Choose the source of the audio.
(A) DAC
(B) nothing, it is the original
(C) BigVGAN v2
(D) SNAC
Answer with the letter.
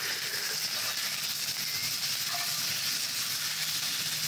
B